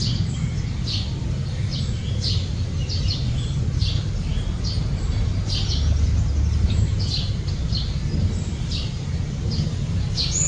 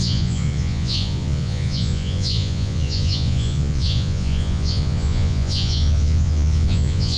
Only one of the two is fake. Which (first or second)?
second